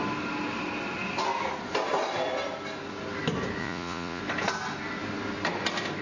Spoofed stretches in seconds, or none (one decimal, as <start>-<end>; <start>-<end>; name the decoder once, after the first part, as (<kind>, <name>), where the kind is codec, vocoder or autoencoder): 3.6-4.2 (vocoder, Vocos)